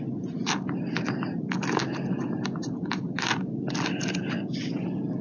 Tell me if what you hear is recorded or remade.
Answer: recorded